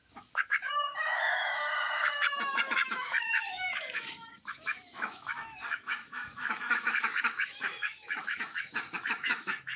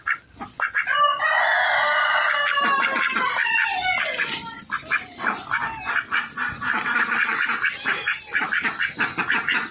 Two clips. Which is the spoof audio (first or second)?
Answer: first